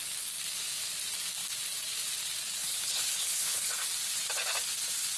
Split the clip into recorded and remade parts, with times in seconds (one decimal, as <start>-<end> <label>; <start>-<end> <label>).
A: 0.0-2.6 recorded; 2.6-3.7 remade; 3.7-5.2 recorded